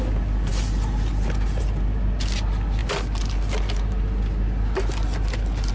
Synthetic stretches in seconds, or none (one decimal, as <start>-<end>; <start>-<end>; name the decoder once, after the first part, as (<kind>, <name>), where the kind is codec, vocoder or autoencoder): none